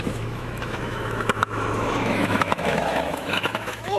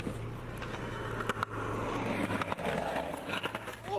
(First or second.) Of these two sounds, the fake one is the first